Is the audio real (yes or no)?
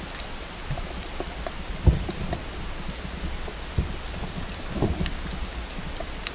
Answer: yes